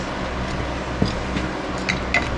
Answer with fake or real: real